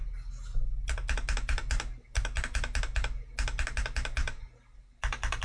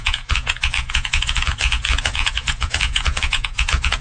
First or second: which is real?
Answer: first